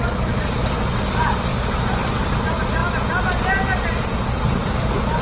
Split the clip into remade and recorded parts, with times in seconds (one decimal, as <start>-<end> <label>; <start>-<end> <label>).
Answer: 0.0-5.2 recorded